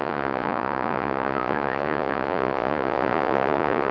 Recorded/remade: remade